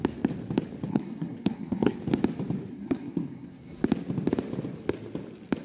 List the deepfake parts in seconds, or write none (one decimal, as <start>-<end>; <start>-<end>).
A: 0.9-2.0; 2.7-3.8